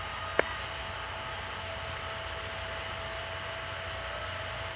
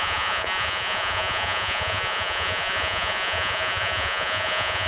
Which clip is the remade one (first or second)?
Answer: second